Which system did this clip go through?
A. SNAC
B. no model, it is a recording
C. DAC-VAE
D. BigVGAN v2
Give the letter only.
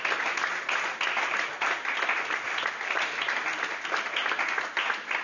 B